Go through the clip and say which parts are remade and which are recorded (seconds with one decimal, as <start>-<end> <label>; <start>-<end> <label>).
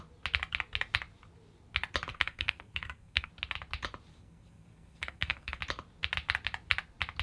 0.0-2.1 recorded; 2.1-3.3 remade; 3.3-4.1 recorded; 4.1-5.6 remade; 5.6-7.2 recorded